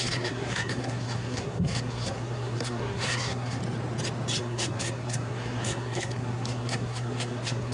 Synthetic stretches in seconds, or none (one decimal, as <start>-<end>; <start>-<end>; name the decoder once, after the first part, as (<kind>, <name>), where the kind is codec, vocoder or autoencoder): 0.0-3.6 (codec, SNAC); 4.4-7.7